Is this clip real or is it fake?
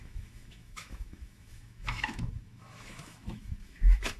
fake